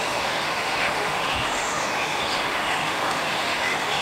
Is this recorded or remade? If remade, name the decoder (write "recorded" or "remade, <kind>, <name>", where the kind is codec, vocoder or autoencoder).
remade, autoencoder, DAC-VAE